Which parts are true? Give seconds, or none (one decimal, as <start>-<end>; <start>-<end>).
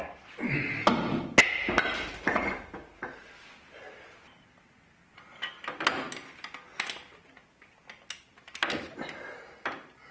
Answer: 0.0-10.1